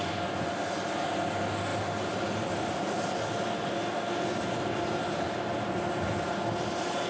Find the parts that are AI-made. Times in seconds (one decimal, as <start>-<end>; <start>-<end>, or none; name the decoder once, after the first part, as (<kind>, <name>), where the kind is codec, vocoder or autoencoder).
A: none